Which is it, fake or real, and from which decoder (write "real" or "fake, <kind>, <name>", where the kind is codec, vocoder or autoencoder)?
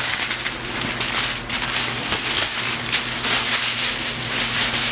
real